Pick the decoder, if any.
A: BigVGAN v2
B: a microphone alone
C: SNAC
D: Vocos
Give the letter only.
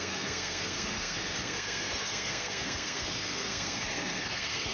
C